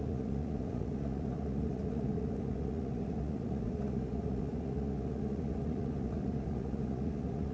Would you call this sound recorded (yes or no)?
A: no